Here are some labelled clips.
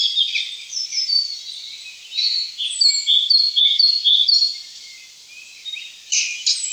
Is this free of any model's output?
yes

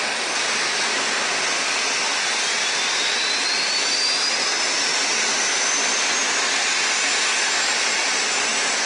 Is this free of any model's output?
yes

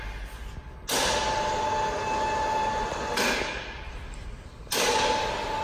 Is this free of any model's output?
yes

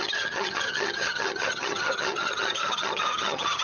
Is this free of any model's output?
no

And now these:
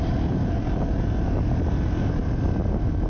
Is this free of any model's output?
yes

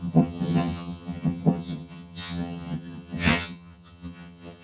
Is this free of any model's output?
no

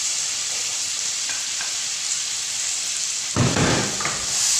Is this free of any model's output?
no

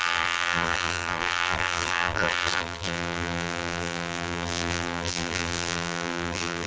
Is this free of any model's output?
no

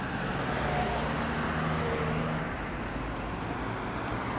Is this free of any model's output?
yes